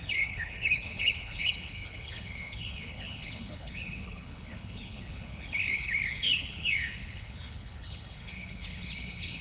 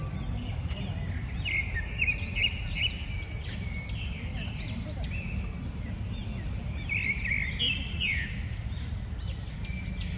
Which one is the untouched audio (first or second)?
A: second